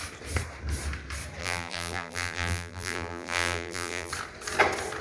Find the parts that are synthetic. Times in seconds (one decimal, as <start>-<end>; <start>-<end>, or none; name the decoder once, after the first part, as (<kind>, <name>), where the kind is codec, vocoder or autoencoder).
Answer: 1.4-4.1 (vocoder, BigVGAN v2)